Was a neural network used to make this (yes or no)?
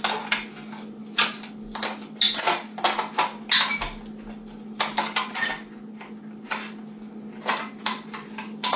no